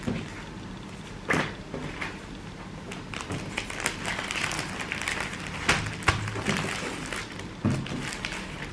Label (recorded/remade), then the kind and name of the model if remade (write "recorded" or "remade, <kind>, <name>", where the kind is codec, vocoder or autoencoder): recorded